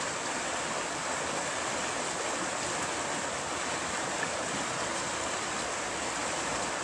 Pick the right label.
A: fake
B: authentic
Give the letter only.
B